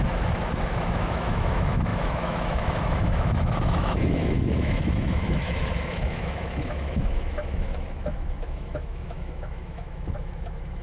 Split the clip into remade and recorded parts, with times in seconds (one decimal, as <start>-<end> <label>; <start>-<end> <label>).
0.0-10.8 remade